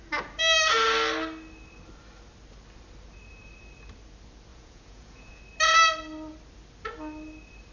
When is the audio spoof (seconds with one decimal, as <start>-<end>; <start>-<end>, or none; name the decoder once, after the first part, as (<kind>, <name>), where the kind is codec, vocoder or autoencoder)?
4.5-5.4 (vocoder, Vocos)